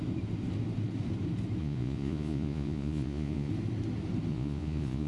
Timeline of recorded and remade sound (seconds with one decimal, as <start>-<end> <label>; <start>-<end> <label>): 0.0-1.6 recorded; 1.6-3.5 remade; 3.5-4.3 recorded; 4.3-5.1 remade